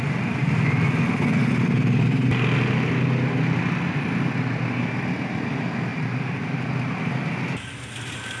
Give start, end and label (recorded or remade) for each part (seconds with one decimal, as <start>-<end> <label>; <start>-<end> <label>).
0.0-5.9 recorded; 5.9-7.1 remade; 7.1-8.4 recorded